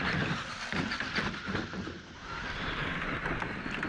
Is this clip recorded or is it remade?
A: recorded